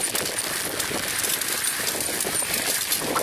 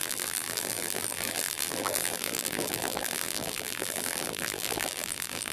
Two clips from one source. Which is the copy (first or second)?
second